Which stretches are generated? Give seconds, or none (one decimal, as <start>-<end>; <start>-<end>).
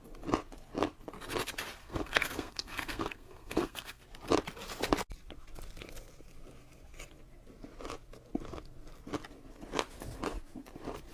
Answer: 1.8-4.0